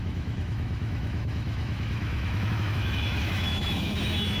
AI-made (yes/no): yes